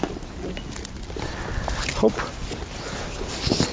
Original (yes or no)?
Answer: yes